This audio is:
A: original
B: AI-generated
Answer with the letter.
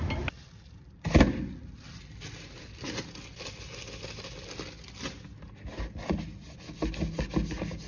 A